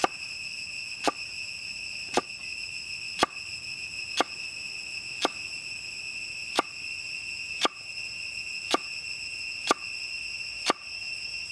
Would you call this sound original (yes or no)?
yes